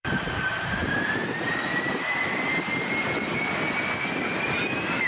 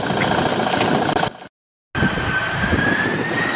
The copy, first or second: first